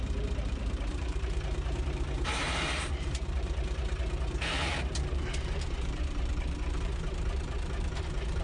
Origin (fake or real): fake